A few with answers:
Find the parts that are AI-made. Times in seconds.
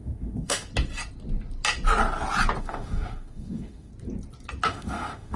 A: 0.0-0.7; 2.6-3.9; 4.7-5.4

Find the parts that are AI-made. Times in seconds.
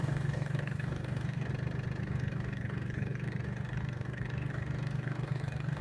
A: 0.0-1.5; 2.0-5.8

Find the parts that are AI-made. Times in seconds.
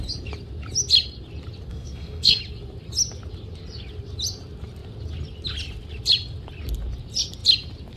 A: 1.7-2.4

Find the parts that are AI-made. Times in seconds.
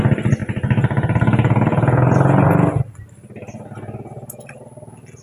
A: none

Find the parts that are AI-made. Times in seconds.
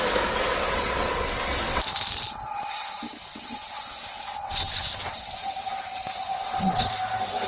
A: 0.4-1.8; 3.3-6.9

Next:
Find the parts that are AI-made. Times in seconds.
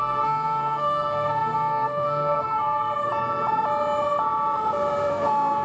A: 0.0-3.1; 5.1-5.6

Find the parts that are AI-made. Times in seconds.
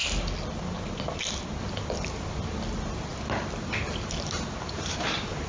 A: none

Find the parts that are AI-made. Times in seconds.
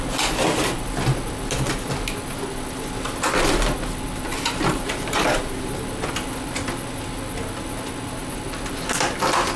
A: 4.3-5.8